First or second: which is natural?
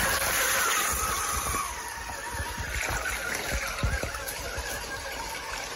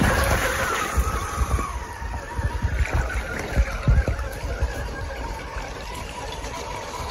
first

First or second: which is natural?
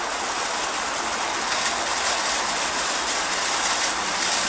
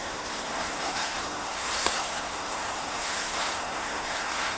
first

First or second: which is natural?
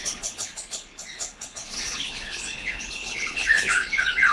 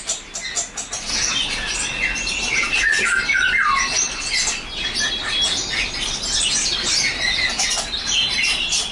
second